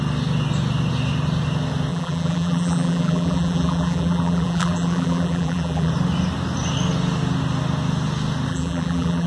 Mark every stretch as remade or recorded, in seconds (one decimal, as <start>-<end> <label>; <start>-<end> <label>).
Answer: 0.0-1.9 recorded; 1.9-5.9 remade; 5.9-8.5 recorded; 8.5-9.3 remade